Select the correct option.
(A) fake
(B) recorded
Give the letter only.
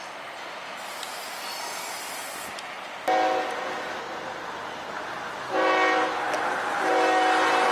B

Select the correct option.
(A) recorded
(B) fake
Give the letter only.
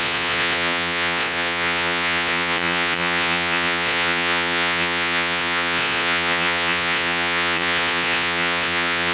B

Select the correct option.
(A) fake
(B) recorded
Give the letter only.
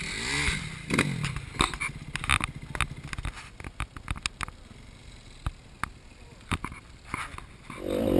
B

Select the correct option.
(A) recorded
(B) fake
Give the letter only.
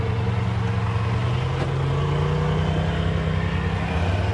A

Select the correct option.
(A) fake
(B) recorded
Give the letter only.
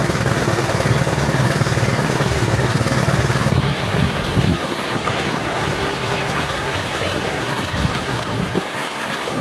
A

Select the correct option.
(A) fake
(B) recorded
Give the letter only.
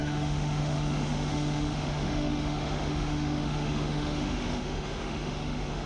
A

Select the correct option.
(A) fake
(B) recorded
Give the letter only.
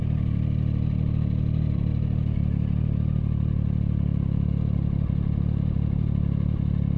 B